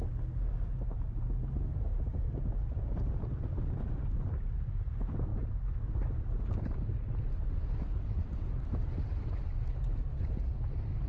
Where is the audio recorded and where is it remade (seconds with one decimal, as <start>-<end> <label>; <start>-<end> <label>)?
0.0-11.1 recorded